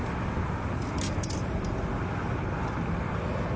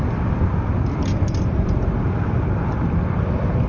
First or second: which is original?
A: first